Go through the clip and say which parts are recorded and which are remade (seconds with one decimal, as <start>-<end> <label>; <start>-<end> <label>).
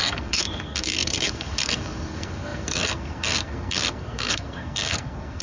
0.0-5.4 remade